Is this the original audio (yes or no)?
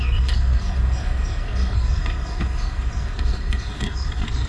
no